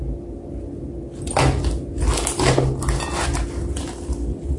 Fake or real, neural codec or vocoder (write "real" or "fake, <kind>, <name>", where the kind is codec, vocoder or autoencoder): real